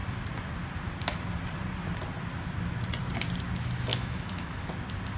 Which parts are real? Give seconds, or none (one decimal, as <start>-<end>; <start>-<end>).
0.0-3.9; 4.7-5.2